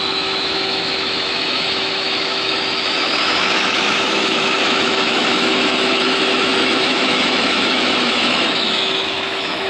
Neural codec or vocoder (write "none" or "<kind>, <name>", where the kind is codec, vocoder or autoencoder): autoencoder, DAC-VAE